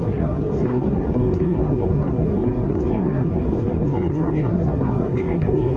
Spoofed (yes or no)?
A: yes